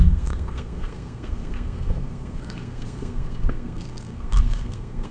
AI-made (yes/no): yes